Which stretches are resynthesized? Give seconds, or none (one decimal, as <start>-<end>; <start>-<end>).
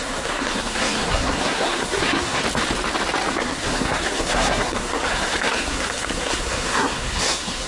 0.0-2.4; 3.3-7.7